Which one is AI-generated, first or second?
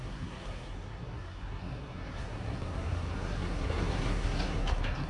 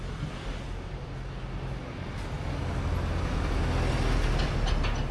first